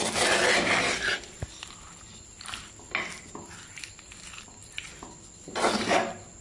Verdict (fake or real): real